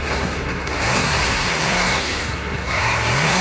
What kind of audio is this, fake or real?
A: fake